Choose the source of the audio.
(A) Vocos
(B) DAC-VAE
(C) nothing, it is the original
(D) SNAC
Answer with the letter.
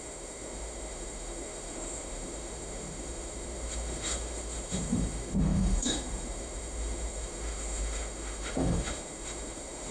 B